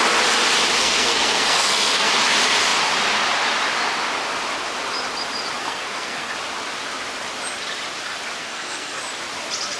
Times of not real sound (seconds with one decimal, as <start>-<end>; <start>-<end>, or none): 0.8-2.1; 5.6-6.3; 8.4-9.0